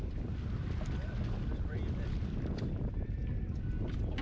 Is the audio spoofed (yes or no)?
no